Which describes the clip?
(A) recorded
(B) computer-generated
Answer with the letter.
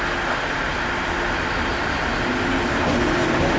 A